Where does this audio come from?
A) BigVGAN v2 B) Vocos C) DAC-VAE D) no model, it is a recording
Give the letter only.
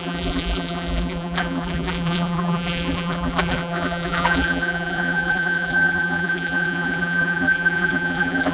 A